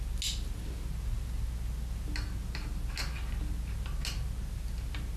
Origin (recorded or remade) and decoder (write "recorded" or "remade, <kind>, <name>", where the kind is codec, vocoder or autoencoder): recorded